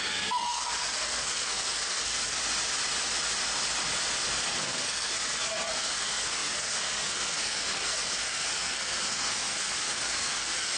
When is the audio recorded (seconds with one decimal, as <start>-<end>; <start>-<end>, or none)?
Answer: 2.4-4.5